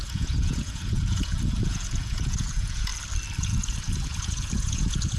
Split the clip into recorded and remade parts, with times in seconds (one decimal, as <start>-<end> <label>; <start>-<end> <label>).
0.0-2.9 remade; 2.9-3.4 recorded; 3.4-5.2 remade